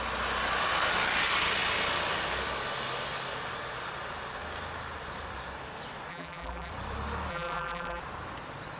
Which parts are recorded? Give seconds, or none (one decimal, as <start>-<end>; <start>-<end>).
0.0-6.1; 6.7-7.3; 8.0-8.8